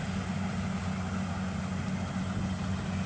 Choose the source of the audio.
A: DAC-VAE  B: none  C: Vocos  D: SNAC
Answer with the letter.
B